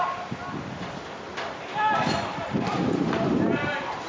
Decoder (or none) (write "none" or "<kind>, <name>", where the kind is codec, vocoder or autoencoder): vocoder, BigVGAN v2